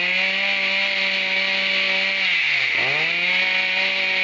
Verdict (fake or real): real